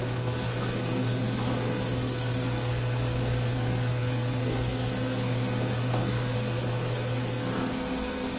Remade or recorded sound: remade